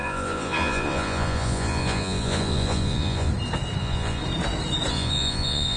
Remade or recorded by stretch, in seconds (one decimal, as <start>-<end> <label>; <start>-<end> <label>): 0.0-3.3 remade; 3.3-3.8 recorded; 3.8-4.2 remade; 4.2-4.9 recorded; 4.9-5.8 remade